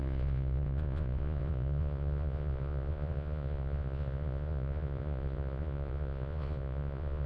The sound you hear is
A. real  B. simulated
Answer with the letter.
B